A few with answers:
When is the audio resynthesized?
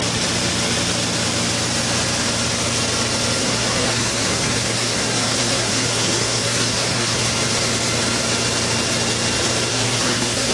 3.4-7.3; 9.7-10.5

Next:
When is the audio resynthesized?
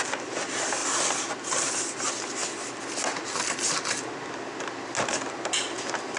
none